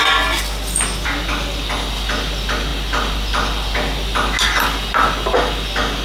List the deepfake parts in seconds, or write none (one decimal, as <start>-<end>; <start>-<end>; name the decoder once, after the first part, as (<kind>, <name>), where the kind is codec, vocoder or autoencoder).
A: none